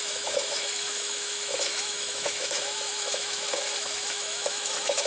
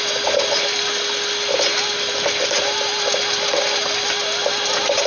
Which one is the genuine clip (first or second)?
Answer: second